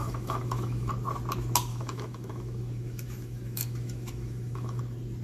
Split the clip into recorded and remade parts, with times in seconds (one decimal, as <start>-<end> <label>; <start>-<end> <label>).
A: 0.0-0.9 remade; 0.9-1.7 recorded; 1.7-4.8 remade; 4.8-5.2 recorded